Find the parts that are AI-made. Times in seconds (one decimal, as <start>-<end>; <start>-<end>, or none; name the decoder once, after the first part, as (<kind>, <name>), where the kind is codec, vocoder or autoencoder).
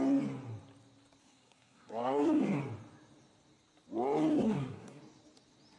1.2-2.6 (codec, SNAC); 4.3-5.0